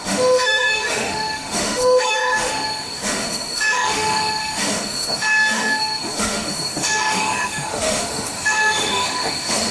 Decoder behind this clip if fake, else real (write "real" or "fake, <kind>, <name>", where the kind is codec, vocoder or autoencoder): fake, autoencoder, DAC-VAE